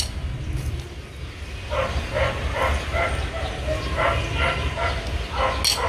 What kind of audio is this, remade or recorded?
recorded